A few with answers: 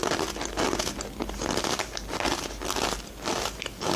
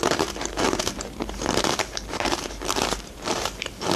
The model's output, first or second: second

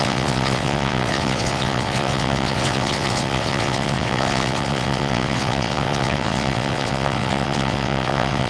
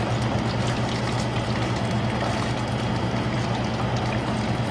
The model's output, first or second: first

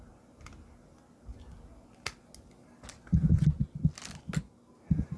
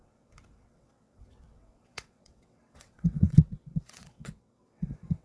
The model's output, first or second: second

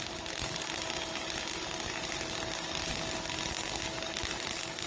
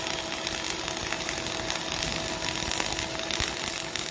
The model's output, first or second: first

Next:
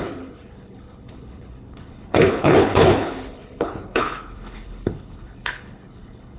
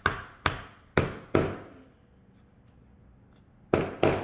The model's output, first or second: first